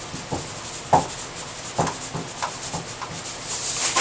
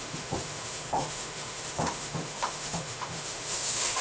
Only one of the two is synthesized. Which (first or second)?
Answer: second